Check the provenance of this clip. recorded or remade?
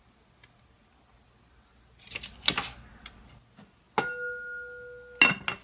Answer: recorded